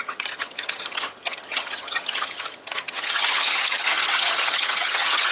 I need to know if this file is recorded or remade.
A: remade